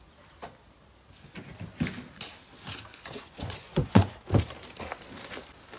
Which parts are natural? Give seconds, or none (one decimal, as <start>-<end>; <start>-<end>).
0.0-2.9; 4.2-5.8